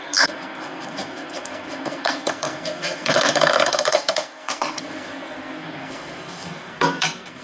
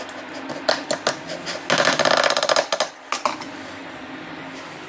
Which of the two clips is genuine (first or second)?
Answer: second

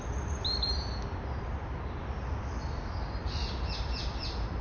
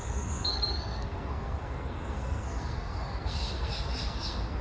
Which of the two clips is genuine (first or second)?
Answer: first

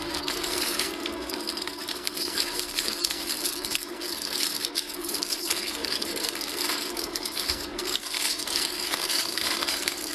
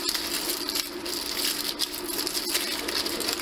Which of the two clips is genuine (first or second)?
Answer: second